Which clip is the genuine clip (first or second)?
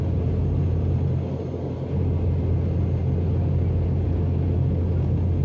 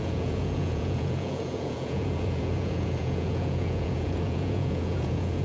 first